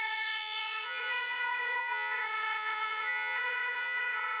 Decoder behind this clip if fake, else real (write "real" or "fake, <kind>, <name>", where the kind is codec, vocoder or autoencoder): fake, vocoder, Vocos